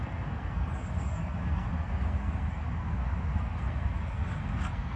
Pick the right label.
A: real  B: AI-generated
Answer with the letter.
B